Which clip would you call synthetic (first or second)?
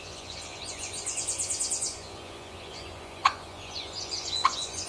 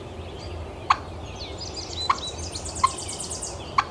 first